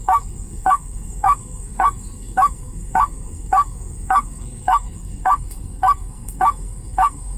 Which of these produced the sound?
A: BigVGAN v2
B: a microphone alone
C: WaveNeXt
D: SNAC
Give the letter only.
D